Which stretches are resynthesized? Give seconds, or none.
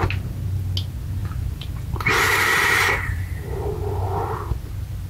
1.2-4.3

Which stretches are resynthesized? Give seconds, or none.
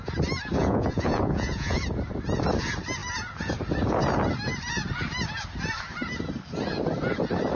0.6-1.8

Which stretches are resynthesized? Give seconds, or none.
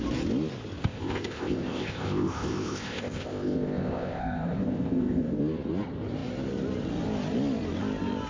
0.8-5.4